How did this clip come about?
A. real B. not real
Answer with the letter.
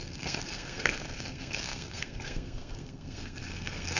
B